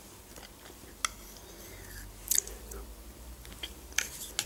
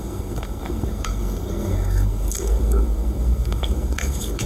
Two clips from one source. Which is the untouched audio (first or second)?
first